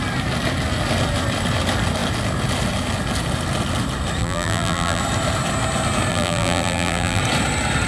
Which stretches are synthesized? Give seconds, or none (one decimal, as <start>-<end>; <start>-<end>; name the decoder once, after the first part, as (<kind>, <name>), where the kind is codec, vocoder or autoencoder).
4.2-5.0 (vocoder, BigVGAN v2); 6.1-7.2